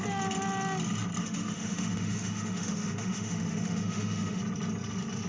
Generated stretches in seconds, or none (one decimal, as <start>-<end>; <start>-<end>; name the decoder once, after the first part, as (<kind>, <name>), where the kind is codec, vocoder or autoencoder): 1.2-4.4 (autoencoder, DAC-VAE)